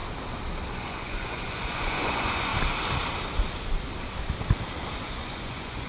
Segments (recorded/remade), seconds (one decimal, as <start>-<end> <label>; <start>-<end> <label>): 0.0-0.7 recorded; 0.7-2.5 remade; 2.5-5.0 recorded; 5.0-5.9 remade